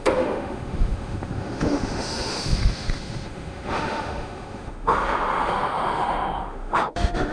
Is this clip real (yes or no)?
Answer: no